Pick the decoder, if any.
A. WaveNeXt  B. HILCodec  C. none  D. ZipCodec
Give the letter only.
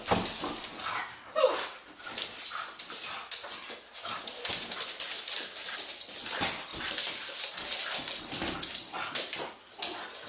C